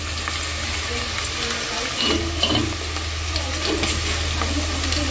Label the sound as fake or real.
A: real